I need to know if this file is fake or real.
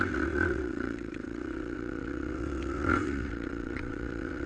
fake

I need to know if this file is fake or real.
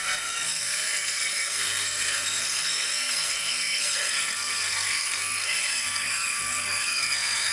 fake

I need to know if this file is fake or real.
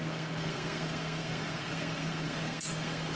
fake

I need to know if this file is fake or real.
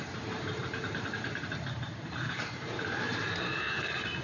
fake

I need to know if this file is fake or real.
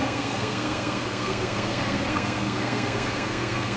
fake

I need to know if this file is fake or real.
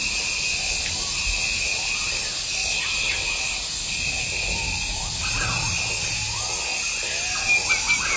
real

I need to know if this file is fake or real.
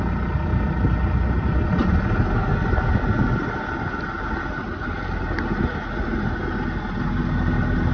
real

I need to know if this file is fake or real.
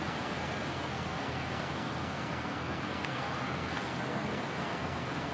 fake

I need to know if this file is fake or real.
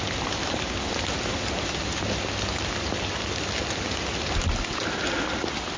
real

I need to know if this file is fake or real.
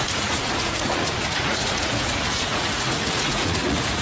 fake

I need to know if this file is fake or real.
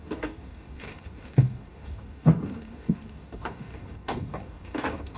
fake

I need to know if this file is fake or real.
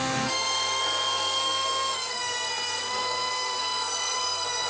fake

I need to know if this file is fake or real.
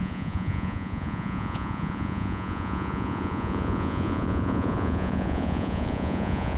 fake